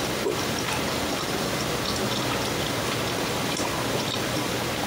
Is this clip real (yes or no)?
no